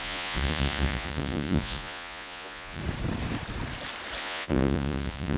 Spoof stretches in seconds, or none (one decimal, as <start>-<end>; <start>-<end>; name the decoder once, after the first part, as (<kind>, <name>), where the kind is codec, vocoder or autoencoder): 0.0-2.8 (vocoder, Vocos); 4.2-5.4